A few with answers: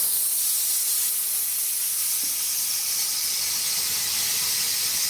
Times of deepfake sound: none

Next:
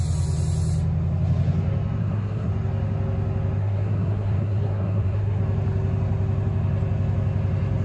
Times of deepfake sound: 2.0-2.5 (codec, SNAC); 3.6-5.4

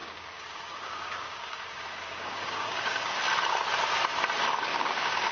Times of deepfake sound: 0.0-3.2 (codec, DAC); 4.7-5.3